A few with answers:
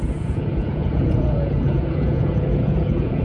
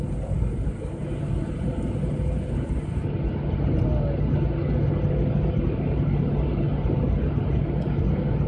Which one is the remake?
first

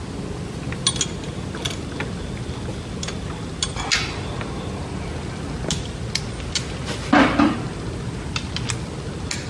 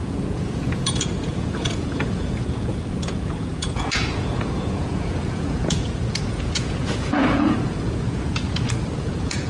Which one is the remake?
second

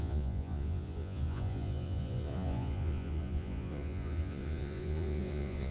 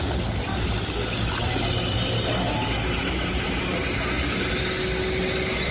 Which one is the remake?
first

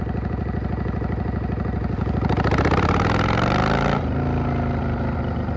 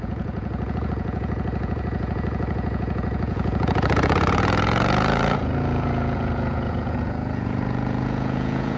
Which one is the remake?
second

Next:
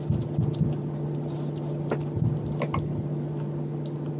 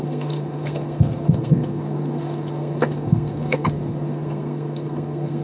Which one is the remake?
second